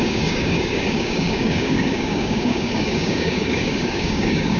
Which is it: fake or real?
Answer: fake